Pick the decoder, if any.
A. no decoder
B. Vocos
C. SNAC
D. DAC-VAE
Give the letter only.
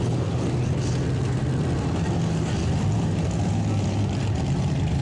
A